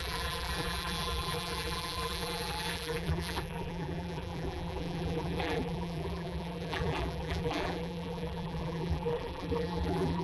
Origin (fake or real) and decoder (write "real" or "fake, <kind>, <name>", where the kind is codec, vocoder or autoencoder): fake, vocoder, BigVGAN v2